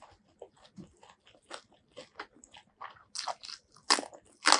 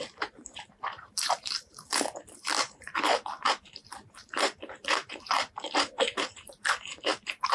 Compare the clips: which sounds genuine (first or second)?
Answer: first